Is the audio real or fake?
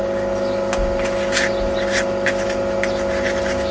real